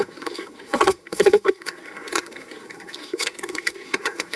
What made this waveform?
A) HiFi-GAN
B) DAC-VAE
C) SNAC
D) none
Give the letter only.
C